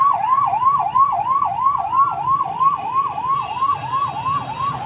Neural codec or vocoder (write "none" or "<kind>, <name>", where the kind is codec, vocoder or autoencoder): none